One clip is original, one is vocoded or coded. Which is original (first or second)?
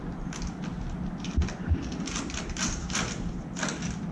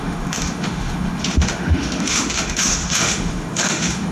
first